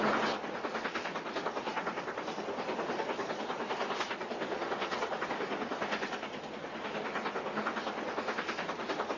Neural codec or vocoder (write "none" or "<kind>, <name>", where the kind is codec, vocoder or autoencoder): none